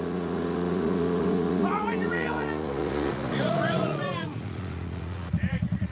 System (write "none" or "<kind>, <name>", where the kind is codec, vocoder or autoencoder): vocoder, Vocos